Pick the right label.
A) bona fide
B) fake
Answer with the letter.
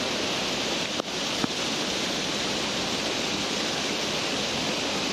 B